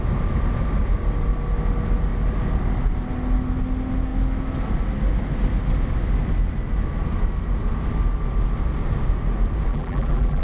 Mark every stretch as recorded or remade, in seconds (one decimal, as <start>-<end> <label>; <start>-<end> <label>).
0.0-9.7 recorded; 9.7-10.4 remade